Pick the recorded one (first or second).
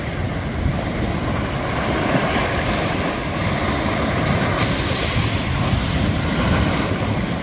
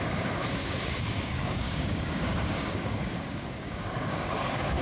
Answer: first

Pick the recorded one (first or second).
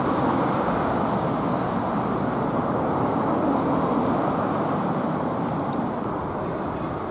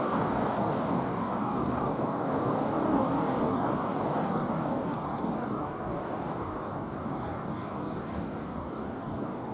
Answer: first